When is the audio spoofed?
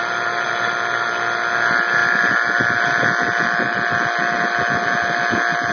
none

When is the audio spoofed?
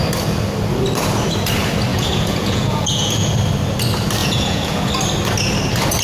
1.9-3.3 (vocoder, Vocos); 4.2-4.9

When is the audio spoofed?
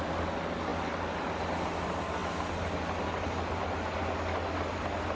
none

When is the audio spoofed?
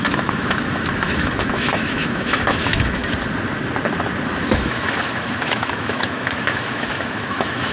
0.0-3.0 (autoencoder, DAC-VAE); 4.5-7.7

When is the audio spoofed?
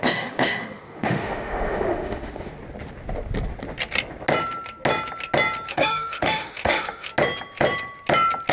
0.0-2.5 (autoencoder, DAC-VAE); 5.7-7.1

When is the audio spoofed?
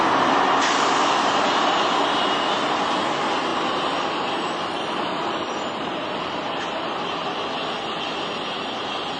none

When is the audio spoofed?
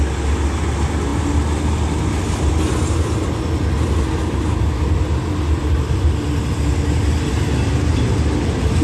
none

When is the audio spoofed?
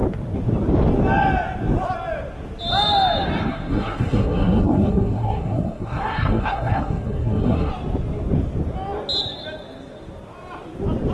3.5-7.7 (codec, SNAC)